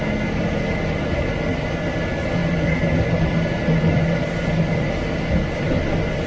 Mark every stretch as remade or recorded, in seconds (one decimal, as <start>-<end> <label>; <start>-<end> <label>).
0.0-6.3 recorded